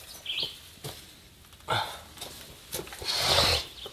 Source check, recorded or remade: recorded